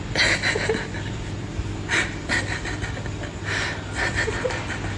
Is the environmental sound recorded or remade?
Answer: recorded